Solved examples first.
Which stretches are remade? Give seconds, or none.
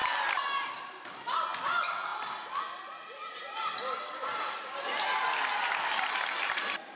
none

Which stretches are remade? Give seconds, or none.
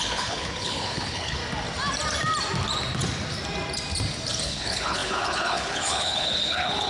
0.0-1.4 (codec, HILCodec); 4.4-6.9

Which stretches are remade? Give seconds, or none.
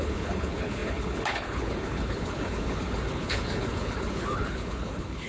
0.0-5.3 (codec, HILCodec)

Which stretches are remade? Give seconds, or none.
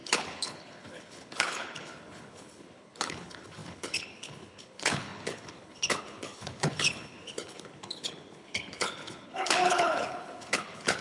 0.0-11.0 (codec, HILCodec)